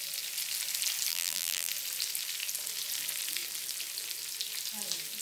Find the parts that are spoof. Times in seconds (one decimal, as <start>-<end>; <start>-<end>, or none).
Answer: 1.1-1.7